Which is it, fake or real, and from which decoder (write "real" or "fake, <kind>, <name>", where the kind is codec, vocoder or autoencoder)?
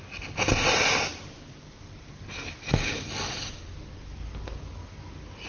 real